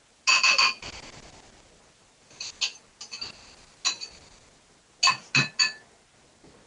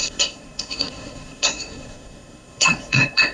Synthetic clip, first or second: second